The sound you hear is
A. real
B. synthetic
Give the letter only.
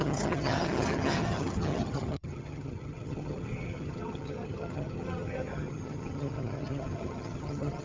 B